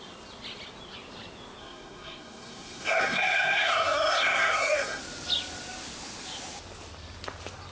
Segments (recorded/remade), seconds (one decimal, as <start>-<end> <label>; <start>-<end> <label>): 0.0-1.6 recorded; 1.6-5.0 remade; 5.0-7.7 recorded